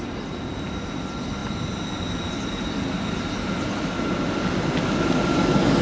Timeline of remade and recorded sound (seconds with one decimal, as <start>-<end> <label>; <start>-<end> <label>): 0.0-5.8 recorded

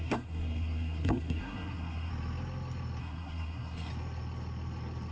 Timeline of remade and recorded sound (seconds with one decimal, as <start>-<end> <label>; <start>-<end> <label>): 0.0-2.1 remade; 2.1-3.0 recorded; 3.0-3.9 remade; 3.9-5.1 recorded

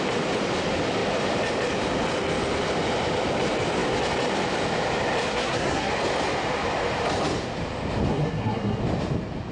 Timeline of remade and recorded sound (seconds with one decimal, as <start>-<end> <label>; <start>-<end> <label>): 0.0-5.3 recorded; 5.3-5.9 remade; 5.9-8.1 recorded; 8.1-8.8 remade; 8.8-9.5 recorded

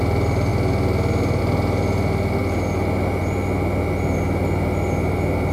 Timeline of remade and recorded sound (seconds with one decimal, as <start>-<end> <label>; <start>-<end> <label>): 0.0-5.5 recorded

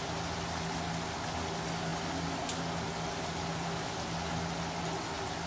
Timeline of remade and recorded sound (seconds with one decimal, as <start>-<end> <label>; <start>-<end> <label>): 0.0-5.5 recorded

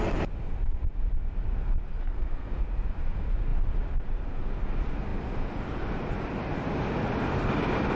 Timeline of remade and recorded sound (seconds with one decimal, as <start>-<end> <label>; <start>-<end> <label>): 0.0-2.0 recorded; 2.0-2.6 remade; 2.6-8.0 recorded

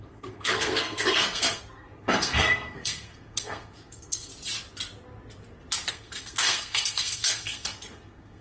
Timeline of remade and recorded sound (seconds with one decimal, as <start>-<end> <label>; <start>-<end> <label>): 0.0-4.3 remade; 4.3-5.9 recorded; 5.9-8.4 remade

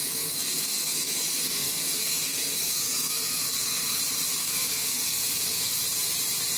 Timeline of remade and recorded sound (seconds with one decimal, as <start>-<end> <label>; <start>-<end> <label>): 0.0-4.0 remade; 4.0-4.4 recorded; 4.4-5.8 remade; 5.8-6.6 recorded